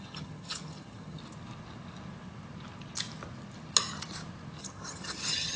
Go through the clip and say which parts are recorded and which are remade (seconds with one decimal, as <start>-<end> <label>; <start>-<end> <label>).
0.0-1.2 remade; 1.2-4.6 recorded; 4.6-5.6 remade